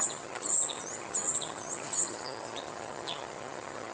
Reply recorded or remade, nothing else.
remade